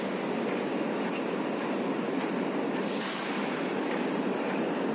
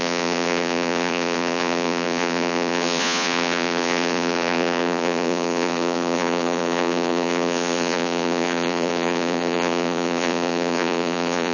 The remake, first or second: second